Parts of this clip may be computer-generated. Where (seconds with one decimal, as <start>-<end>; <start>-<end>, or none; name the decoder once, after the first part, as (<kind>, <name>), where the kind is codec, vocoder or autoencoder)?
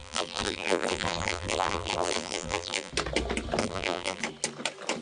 0.0-2.9 (vocoder, BigVGAN v2); 3.6-4.2